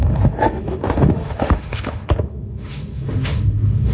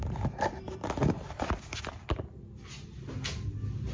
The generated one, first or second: first